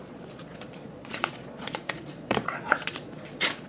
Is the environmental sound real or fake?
fake